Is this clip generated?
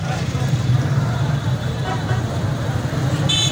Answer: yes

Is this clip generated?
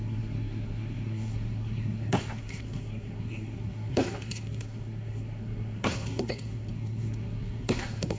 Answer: yes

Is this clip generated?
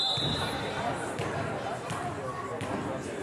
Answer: yes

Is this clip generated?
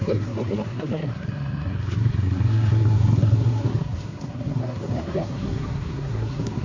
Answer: yes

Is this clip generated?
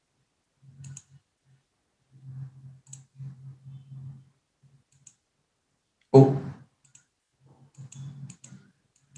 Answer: no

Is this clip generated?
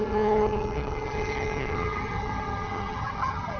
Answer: yes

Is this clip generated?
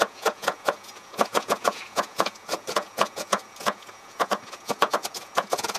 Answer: yes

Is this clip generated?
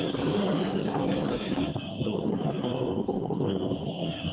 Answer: yes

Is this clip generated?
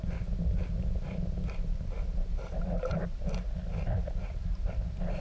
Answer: no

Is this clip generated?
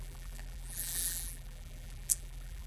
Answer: yes